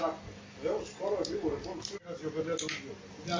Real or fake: real